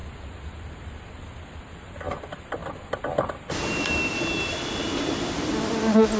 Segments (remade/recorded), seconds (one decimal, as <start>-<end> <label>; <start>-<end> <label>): 0.0-6.2 recorded